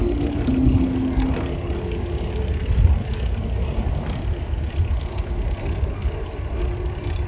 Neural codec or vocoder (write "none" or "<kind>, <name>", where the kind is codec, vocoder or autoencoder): none